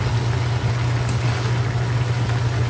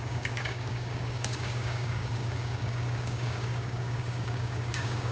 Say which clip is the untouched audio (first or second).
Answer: first